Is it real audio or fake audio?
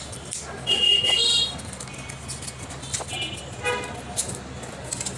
real